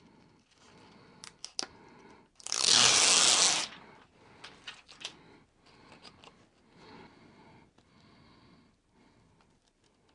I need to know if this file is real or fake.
real